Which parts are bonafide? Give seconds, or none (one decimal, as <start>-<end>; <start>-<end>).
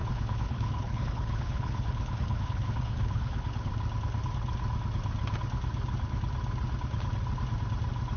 3.7-8.2